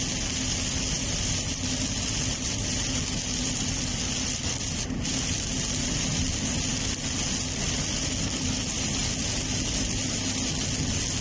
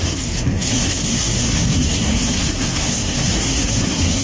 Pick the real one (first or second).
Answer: first